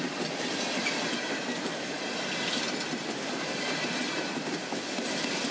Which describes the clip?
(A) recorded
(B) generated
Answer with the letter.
A